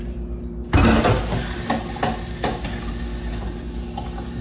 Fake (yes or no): no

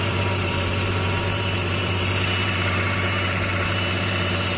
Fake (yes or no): yes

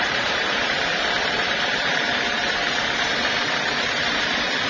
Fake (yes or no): yes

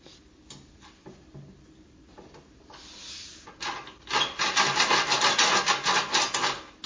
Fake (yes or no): no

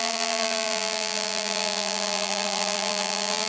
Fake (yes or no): yes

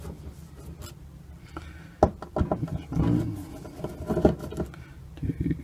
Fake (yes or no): no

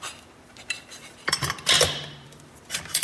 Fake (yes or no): yes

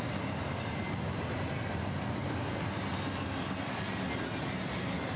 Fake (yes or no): no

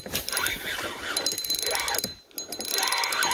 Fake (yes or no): no